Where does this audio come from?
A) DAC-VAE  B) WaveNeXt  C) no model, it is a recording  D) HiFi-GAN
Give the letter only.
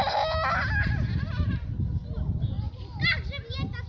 C